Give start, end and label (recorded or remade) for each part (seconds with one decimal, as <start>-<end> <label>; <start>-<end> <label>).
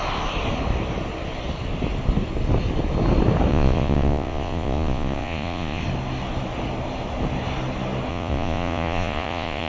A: 0.0-3.5 recorded; 3.5-5.8 remade; 5.8-8.1 recorded; 8.1-9.7 remade